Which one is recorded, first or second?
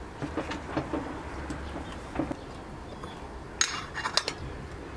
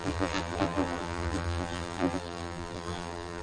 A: first